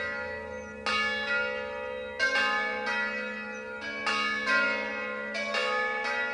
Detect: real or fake real